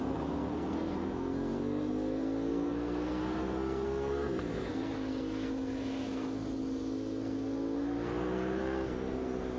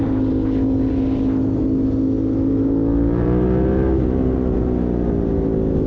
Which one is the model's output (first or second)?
first